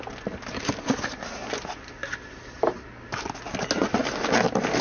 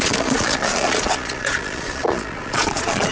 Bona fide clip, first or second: first